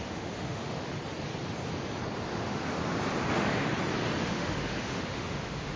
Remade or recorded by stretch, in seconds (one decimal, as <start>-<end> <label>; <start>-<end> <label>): 0.0-1.0 remade; 1.0-2.3 recorded; 2.3-2.8 remade; 2.8-3.3 recorded; 3.3-3.7 remade; 3.7-4.2 recorded; 4.2-5.8 remade